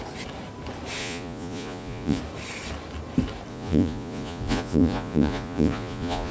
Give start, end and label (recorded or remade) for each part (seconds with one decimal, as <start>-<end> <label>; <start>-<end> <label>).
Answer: 0.0-1.0 recorded; 1.0-2.2 remade; 2.2-3.5 recorded; 3.5-6.3 remade